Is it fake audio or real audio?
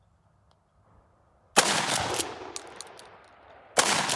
real